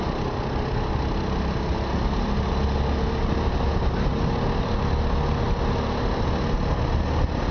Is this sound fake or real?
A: real